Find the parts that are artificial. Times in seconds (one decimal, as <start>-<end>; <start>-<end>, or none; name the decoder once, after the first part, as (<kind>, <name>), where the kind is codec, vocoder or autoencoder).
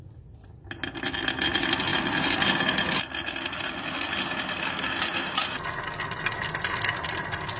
none